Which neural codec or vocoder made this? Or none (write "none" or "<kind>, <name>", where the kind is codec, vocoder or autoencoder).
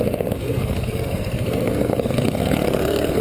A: codec, SNAC